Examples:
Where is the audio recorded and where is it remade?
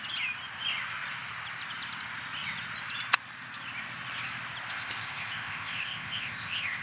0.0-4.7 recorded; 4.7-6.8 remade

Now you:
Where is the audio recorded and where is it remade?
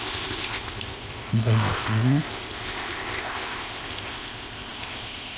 0.0-5.4 remade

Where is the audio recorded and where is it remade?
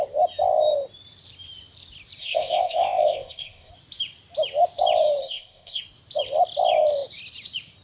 0.0-2.2 recorded; 2.2-3.7 remade; 3.7-5.2 recorded; 5.2-5.8 remade; 5.8-7.8 recorded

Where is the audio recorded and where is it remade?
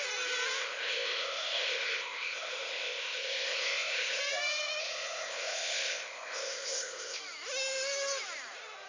0.0-0.6 recorded; 0.6-4.2 remade; 4.2-4.8 recorded; 4.8-7.2 remade; 7.2-8.9 recorded